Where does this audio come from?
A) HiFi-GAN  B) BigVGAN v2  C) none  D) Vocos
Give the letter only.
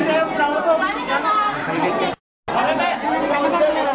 C